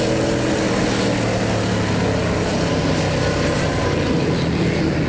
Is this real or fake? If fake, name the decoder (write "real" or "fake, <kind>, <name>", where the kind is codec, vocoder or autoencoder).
real